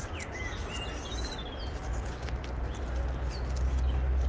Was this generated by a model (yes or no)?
no